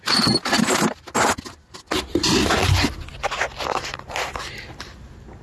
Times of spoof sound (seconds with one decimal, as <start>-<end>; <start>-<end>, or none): none